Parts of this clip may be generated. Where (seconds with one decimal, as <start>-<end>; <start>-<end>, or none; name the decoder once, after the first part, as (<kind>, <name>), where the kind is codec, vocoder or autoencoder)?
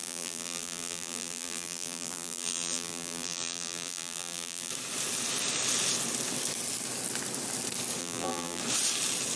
0.0-4.7 (vocoder, BigVGAN v2); 8.0-8.6